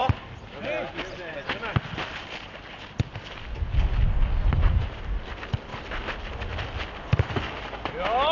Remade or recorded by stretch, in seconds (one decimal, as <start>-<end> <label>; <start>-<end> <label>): 0.0-8.3 recorded